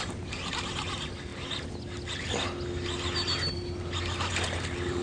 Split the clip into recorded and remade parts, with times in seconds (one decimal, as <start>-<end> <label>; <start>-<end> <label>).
0.0-5.0 recorded